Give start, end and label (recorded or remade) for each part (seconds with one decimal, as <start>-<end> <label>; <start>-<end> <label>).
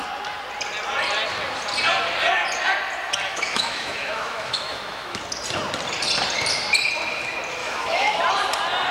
0.0-3.3 recorded; 3.3-5.2 remade; 5.2-7.6 recorded; 7.6-8.2 remade; 8.2-8.9 recorded